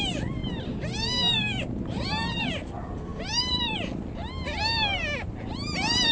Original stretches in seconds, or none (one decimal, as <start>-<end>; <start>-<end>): 0.0-6.1